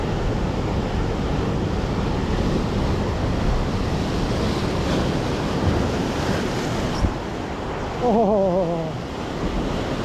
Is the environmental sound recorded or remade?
recorded